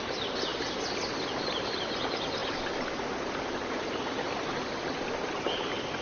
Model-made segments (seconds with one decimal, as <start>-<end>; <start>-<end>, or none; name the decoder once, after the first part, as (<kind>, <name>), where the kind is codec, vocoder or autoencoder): none